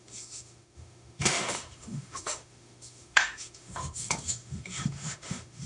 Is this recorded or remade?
remade